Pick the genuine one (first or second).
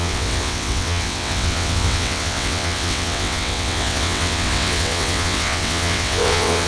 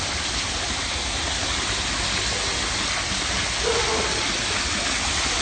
second